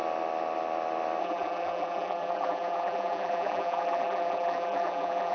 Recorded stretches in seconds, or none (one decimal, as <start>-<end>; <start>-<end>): 0.0-1.2